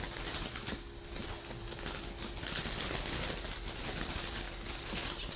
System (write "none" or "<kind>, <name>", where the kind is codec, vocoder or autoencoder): none